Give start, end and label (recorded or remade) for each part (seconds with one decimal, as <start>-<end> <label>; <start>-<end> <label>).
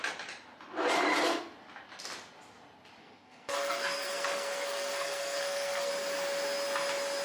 0.0-3.0 recorded; 3.0-5.9 remade; 5.9-7.2 recorded